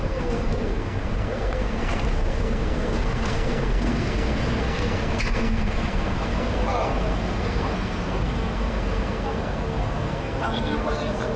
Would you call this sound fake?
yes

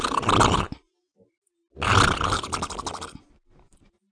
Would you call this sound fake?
no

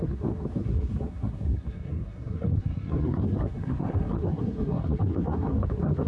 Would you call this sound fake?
yes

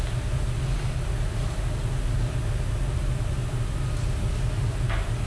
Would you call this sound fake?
no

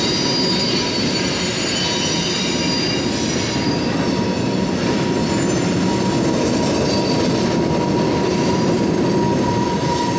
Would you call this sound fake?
no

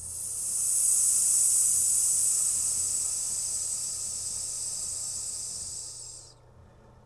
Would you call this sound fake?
no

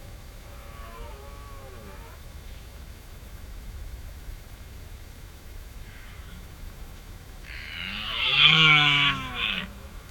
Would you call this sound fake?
yes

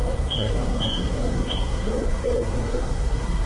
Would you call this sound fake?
yes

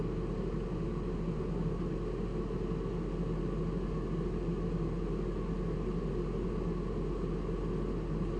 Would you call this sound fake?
no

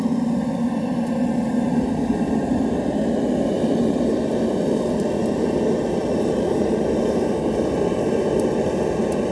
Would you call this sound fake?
no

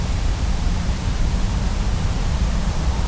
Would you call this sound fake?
yes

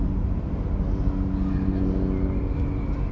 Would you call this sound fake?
no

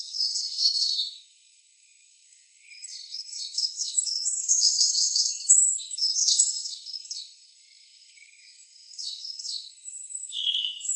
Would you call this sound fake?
yes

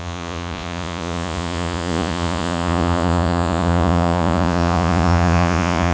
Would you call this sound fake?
yes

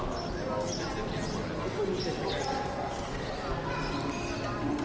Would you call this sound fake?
no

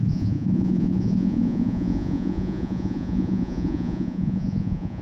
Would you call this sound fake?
yes